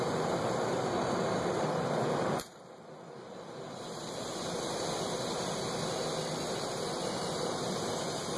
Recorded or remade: recorded